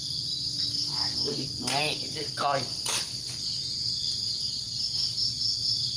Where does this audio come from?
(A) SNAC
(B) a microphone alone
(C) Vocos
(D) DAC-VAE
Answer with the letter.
B